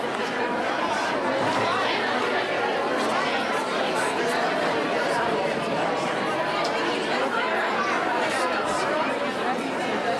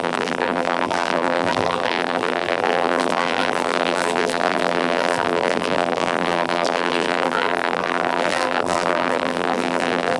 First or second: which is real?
first